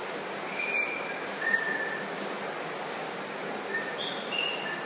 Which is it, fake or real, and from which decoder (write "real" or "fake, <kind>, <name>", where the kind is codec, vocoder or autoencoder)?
real